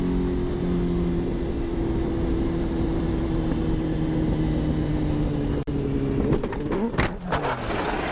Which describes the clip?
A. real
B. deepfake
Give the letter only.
A